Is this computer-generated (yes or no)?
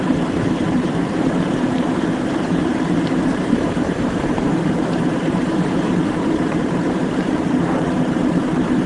yes